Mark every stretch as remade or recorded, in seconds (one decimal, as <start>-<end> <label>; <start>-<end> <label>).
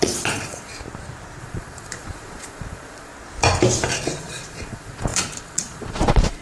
0.0-0.7 remade; 0.7-1.4 recorded; 1.4-3.1 remade; 3.1-4.2 recorded; 4.2-6.4 remade